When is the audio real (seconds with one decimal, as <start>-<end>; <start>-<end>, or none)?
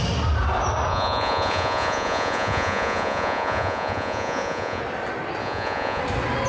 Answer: 0.0-0.9; 4.8-5.4; 6.0-6.5